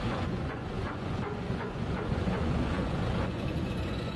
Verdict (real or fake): fake